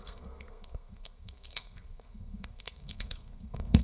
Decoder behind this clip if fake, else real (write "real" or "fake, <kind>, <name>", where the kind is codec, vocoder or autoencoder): fake, codec, SNAC